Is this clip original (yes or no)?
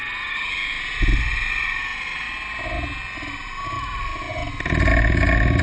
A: yes